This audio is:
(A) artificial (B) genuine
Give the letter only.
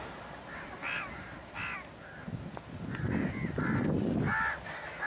B